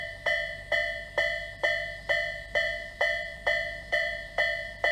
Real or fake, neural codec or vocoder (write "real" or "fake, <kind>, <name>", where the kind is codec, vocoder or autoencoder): fake, vocoder, BigVGAN v2